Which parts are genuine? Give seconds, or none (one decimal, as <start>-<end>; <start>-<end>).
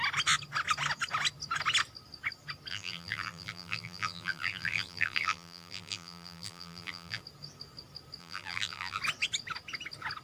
0.0-2.7; 7.2-8.2; 9.0-10.2